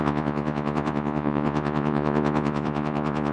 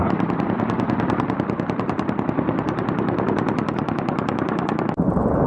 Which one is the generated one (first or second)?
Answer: first